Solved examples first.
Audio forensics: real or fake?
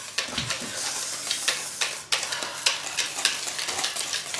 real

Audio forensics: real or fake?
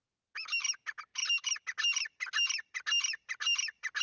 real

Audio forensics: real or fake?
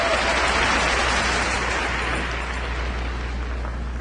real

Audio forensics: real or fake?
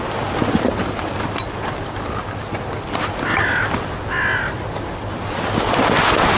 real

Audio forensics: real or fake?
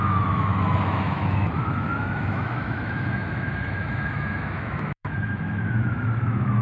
fake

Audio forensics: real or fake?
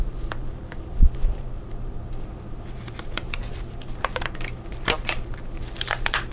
fake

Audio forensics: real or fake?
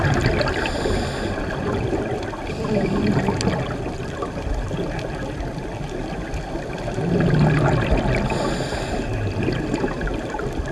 real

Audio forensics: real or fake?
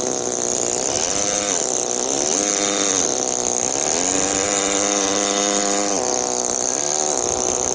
real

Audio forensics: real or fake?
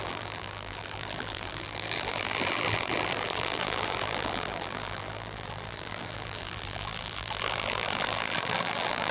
fake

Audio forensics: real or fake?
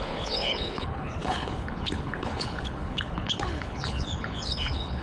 fake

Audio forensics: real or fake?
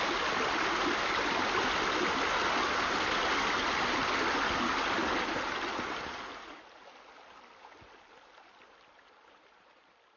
real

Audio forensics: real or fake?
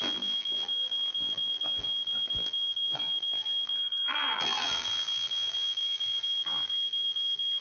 fake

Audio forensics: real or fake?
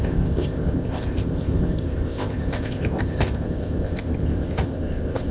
fake